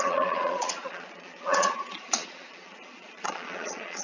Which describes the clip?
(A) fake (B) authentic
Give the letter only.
A